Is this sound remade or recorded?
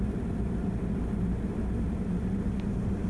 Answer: remade